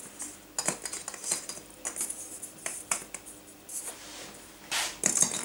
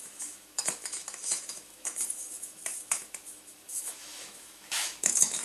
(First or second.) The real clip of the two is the first